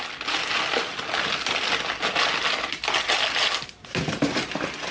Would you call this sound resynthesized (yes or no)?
no